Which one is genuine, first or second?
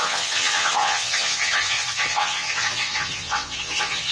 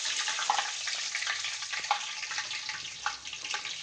second